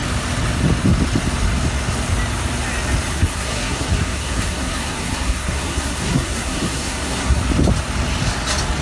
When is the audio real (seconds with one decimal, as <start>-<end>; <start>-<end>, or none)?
0.0-3.1; 7.4-8.8